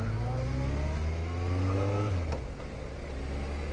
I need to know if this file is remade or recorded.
recorded